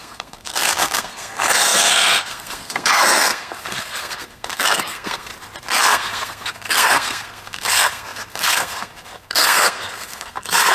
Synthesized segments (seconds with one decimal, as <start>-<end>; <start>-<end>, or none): 0.0-5.3; 5.8-10.7